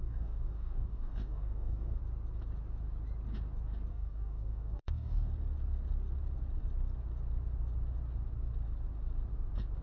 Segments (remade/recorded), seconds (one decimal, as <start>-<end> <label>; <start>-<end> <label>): 0.0-2.0 remade; 2.0-3.9 recorded; 3.9-5.3 remade; 5.3-9.8 recorded